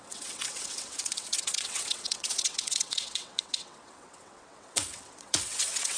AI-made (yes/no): yes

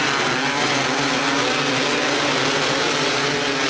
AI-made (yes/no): no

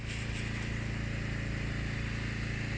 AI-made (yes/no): no